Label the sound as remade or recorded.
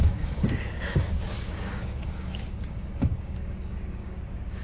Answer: remade